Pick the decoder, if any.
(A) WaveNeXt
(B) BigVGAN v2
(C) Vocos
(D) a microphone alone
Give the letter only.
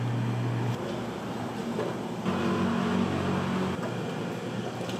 D